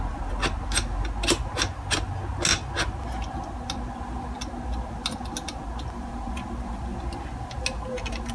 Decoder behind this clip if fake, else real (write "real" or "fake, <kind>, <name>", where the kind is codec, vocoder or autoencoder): real